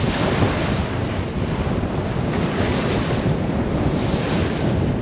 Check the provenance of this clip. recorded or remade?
recorded